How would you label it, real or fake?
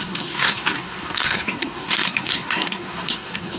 fake